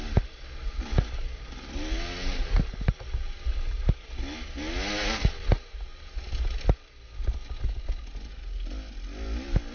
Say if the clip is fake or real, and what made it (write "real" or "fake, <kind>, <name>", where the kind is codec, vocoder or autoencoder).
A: real